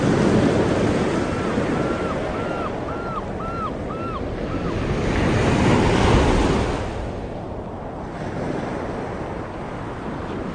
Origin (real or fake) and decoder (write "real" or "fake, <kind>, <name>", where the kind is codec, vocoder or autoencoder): real